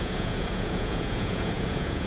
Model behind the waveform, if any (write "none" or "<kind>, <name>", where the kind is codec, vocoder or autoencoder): vocoder, Vocos